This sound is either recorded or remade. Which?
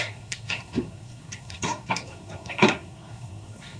remade